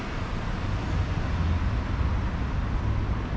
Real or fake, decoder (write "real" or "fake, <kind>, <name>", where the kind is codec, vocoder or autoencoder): real